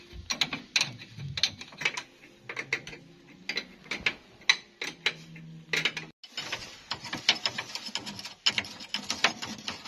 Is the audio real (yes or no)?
yes